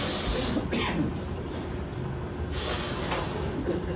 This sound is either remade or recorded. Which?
recorded